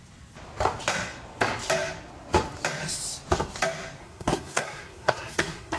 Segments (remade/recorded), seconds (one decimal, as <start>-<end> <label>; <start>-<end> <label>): 0.0-4.0 recorded; 4.0-5.8 remade